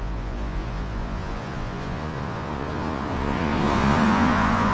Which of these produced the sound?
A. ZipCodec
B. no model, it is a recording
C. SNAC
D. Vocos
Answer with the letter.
D